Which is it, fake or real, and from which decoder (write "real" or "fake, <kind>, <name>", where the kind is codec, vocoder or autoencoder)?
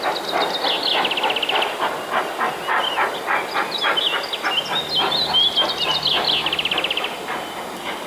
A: real